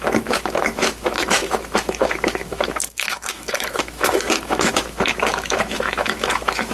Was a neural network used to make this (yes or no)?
yes